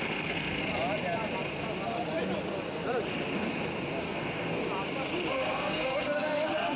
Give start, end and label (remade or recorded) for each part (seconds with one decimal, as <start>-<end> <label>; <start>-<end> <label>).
0.0-0.6 remade; 0.6-4.0 recorded; 4.0-4.6 remade; 4.6-5.3 recorded; 5.3-6.8 remade